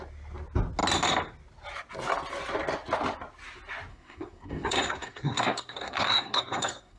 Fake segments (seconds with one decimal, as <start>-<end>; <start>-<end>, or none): 3.9-7.0